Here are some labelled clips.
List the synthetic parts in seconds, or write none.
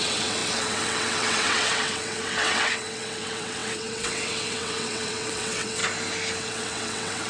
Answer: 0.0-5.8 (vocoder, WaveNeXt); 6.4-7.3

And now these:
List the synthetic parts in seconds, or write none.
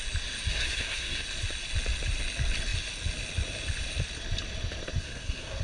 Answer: 0.5-1.2 (codec, SNAC); 5.0-5.6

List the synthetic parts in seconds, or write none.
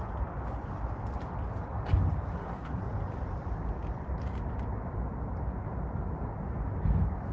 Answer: 2.3-2.8 (codec, SNAC)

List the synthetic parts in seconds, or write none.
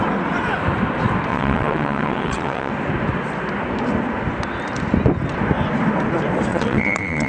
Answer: 1.3-2.7 (vocoder, WaveNeXt); 6.5-7.3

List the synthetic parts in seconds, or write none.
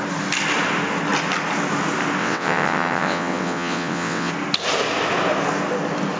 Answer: 2.2-4.3 (vocoder, WaveNeXt)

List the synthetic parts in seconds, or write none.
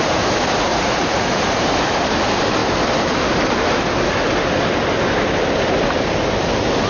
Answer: 0.7-1.4 (vocoder, Vocos)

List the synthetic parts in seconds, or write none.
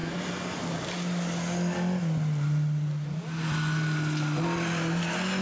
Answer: none